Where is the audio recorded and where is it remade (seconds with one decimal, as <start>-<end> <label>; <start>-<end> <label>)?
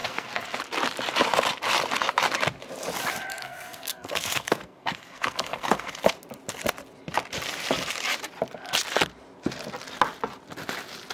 0.0-0.6 remade; 0.6-3.3 recorded; 3.3-6.1 remade; 6.1-11.1 recorded